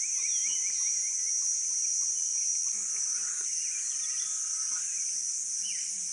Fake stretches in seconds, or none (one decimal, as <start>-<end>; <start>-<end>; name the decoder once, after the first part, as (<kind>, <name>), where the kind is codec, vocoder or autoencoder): none